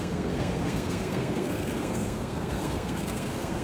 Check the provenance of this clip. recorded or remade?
remade